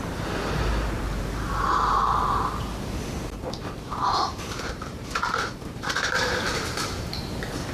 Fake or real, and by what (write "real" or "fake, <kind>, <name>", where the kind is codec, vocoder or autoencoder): fake, vocoder, BigVGAN v2